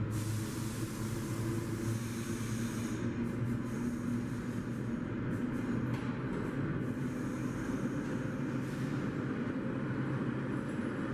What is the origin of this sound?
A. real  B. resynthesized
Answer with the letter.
A